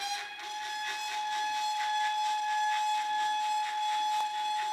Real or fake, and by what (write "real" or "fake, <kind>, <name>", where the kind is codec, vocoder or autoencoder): real